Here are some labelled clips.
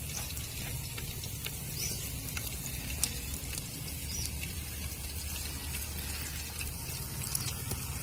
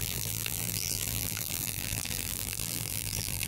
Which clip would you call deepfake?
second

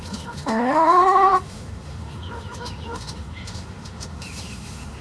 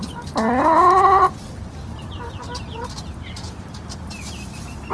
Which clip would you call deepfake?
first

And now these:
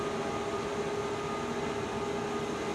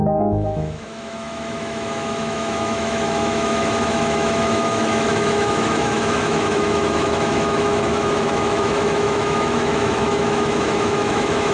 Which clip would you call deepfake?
second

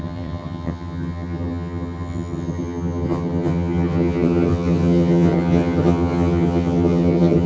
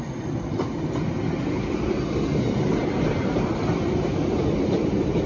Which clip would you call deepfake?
first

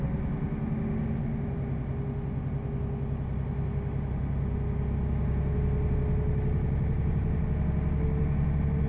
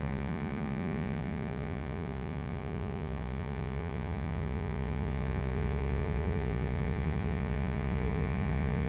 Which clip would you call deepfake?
second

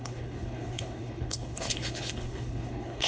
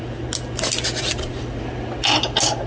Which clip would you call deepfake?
first